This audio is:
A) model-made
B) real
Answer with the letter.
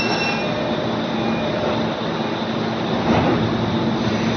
B